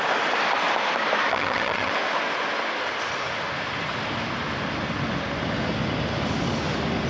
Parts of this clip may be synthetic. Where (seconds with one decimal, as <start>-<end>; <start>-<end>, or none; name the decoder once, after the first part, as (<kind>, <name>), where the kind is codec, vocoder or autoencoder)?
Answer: 1.3-1.9 (vocoder, HiFi-GAN)